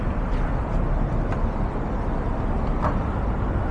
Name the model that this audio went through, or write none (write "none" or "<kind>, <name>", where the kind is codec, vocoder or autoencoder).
none